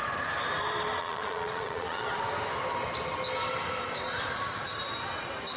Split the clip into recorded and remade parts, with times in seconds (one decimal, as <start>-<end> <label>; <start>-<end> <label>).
0.0-1.0 recorded; 1.0-2.1 remade; 2.1-5.6 recorded